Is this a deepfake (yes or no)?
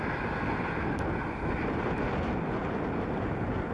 no